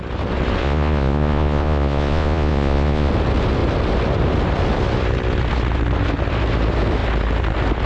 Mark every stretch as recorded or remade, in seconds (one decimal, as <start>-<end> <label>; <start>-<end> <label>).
0.0-0.6 recorded; 0.6-3.1 remade; 3.1-7.9 recorded